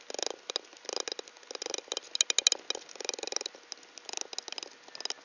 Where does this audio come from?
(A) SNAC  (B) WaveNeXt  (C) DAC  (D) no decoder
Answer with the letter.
D